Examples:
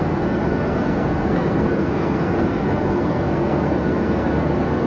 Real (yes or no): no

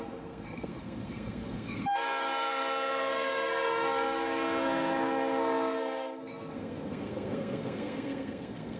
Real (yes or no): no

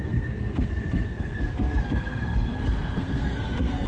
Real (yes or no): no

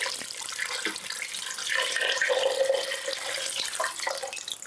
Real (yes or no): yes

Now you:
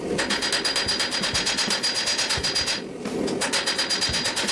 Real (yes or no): yes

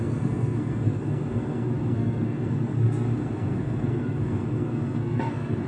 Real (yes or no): no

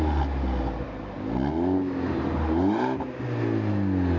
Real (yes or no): yes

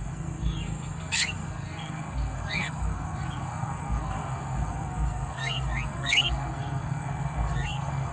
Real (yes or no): no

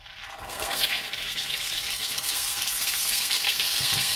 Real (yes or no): no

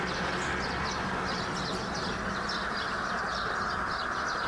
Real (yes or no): yes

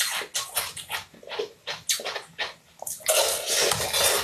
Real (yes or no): yes